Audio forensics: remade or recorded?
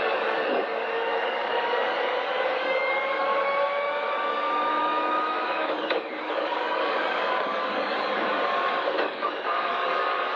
remade